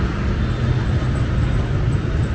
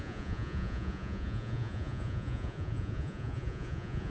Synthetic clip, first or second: second